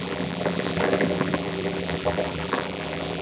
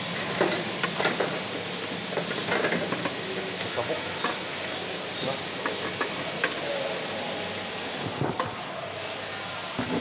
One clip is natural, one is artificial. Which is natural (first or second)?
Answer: second